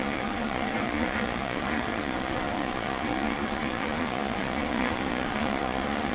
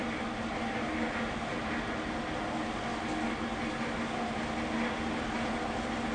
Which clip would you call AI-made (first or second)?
first